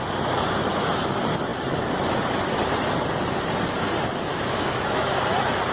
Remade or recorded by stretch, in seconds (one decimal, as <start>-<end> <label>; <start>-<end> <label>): 0.0-4.3 recorded; 4.3-5.2 remade; 5.2-5.7 recorded